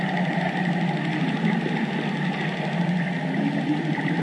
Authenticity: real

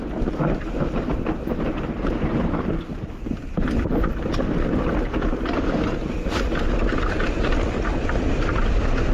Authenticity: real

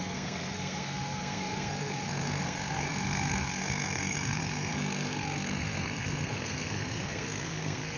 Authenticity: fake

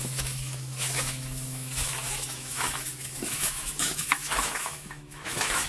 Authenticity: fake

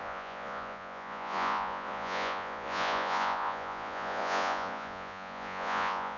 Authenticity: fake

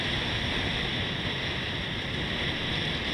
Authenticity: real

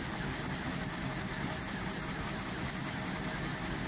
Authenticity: real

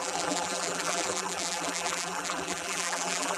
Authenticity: fake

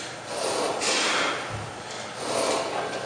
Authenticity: real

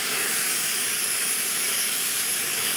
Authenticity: fake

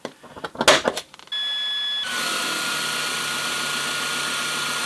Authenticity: real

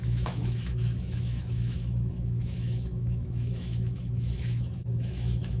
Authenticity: fake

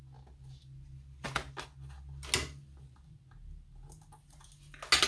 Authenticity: real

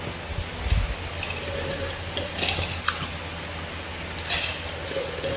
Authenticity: real